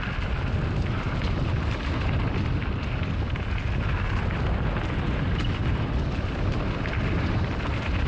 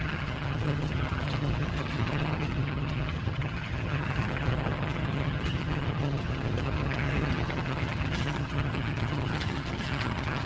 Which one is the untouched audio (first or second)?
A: first